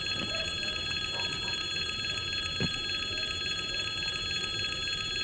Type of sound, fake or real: fake